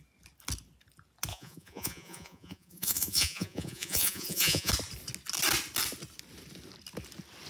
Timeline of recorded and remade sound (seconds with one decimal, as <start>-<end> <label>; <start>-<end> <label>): 0.0-1.3 recorded; 1.3-4.7 remade; 4.7-7.5 recorded